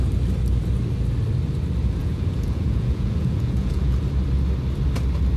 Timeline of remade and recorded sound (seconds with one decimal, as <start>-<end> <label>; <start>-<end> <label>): 0.0-2.0 recorded; 2.0-4.0 remade; 4.0-5.4 recorded